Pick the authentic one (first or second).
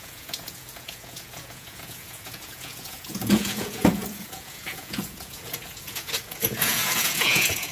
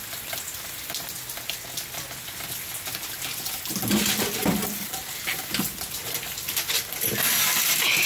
second